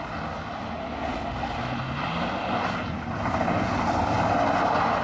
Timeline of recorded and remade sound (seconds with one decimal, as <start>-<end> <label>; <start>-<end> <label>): 0.0-5.0 recorded